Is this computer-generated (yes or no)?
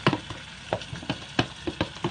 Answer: no